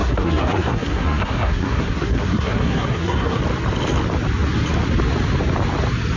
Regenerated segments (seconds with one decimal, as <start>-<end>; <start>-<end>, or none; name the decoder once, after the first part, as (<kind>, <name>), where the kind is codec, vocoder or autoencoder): 0.0-3.4 (codec, SNAC)